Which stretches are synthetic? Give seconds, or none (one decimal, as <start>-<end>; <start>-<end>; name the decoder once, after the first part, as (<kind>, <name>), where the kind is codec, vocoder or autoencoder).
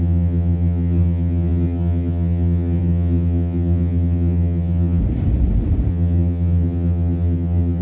0.0-5.0 (vocoder, HiFi-GAN); 5.9-7.8